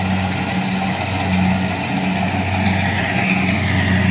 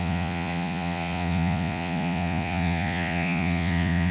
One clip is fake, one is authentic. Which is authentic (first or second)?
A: first